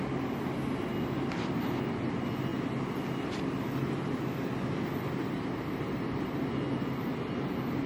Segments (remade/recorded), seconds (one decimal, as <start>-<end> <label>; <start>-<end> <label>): 0.0-7.9 recorded